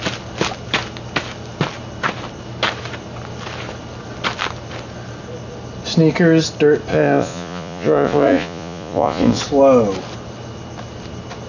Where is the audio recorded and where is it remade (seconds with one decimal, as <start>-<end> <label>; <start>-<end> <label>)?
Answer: 0.0-6.9 recorded; 6.9-9.4 remade; 9.4-11.5 recorded